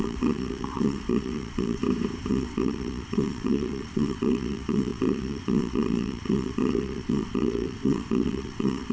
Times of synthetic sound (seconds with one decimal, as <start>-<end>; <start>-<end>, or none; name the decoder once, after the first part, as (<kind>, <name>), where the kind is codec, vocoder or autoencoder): 0.0-1.8 (vocoder, WaveNeXt); 2.3-8.9